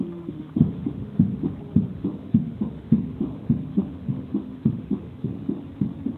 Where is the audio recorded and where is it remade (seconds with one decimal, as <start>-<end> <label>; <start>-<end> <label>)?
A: 0.0-1.5 remade; 1.5-1.9 recorded; 1.9-5.6 remade; 5.6-6.2 recorded